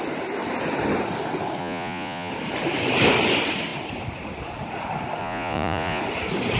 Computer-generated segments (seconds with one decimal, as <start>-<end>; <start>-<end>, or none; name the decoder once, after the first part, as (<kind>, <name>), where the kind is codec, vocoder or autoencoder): 1.6-2.3 (vocoder, Vocos); 5.2-6.0